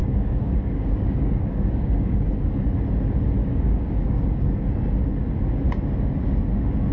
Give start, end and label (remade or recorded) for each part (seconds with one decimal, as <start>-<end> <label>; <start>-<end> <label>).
0.0-2.8 remade; 2.8-3.4 recorded; 3.4-4.7 remade; 4.7-6.9 recorded